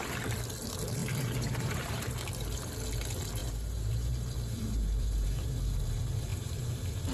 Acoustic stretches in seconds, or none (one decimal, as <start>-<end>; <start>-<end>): 0.0-1.0; 2.1-3.4; 5.5-6.3